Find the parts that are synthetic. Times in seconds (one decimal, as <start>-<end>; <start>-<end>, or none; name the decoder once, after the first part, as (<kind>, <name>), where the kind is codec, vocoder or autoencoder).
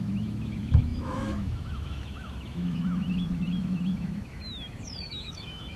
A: 0.0-5.8 (autoencoder, DAC-VAE)